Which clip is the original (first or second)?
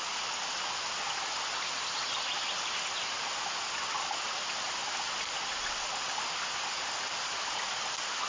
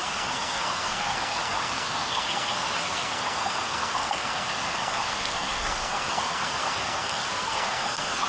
first